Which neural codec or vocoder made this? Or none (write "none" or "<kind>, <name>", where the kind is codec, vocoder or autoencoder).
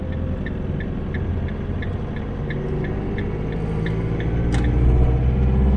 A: none